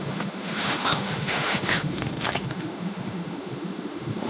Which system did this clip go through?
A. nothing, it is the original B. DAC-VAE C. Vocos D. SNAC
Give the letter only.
B